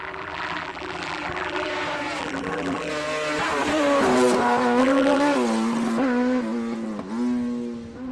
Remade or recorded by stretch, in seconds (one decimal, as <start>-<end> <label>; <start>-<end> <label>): 0.0-1.7 remade; 1.7-2.2 recorded; 2.2-2.9 remade; 2.9-4.8 recorded; 4.8-5.2 remade; 5.2-8.1 recorded